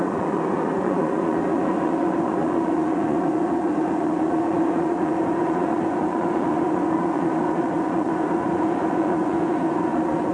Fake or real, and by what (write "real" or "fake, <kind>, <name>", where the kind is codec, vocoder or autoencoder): fake, vocoder, Vocos